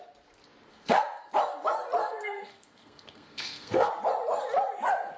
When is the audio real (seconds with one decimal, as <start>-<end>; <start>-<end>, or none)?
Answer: 0.0-0.7; 1.3-2.0; 3.9-5.2